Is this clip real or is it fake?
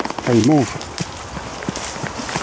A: real